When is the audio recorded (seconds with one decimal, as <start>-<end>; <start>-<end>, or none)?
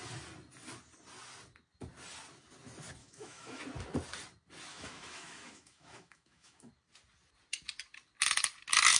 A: 0.0-3.0; 3.6-4.7; 6.7-9.0